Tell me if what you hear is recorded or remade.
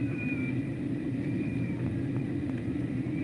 remade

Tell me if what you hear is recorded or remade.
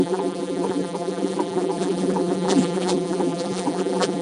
remade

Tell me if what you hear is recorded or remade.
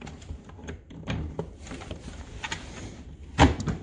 remade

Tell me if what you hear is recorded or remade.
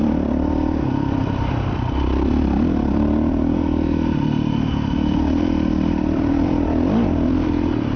remade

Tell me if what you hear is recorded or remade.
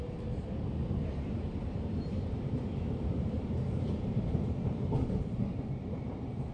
remade